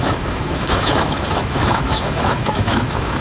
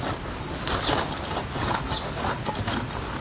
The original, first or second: second